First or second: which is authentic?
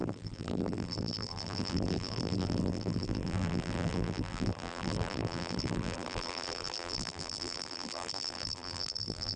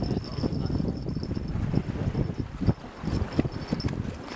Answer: second